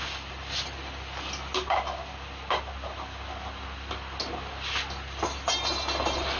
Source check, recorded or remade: recorded